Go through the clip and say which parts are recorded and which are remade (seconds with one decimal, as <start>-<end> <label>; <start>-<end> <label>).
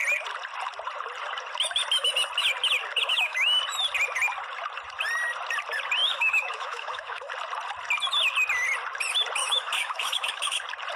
0.0-3.1 recorded; 3.1-3.6 remade; 3.6-6.0 recorded; 6.0-7.3 remade; 7.3-9.4 recorded; 9.4-10.6 remade; 10.6-11.0 recorded